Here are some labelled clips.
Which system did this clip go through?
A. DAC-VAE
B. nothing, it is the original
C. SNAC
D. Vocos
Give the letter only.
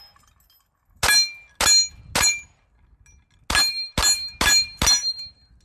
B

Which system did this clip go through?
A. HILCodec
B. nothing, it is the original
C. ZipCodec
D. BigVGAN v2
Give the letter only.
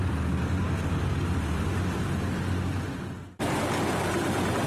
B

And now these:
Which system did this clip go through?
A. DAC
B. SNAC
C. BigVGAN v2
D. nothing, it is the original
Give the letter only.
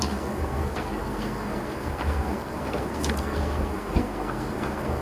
B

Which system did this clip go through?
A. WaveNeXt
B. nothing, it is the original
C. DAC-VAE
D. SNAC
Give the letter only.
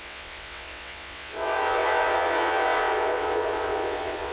A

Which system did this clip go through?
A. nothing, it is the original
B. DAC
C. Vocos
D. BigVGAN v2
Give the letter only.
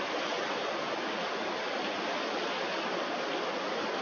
A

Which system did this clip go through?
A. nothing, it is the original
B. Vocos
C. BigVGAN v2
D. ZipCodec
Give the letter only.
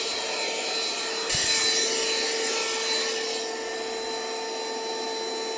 A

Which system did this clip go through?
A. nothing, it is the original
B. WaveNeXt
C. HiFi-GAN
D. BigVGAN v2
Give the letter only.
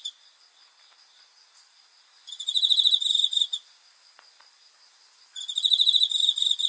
D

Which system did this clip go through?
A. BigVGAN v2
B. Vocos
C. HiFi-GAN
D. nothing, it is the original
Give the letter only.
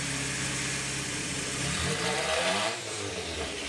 A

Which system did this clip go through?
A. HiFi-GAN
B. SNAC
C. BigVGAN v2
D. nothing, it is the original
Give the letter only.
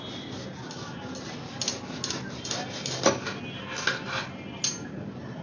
D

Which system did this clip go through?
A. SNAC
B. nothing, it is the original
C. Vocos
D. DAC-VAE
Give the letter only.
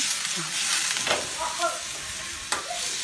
B